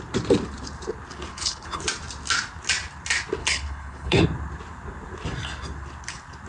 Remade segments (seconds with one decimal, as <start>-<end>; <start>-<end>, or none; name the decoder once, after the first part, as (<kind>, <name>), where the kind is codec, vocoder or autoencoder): 1.3-1.8 (codec, HILCodec); 3.4-4.2